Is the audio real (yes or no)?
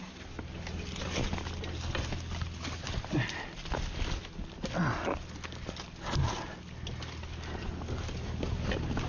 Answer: yes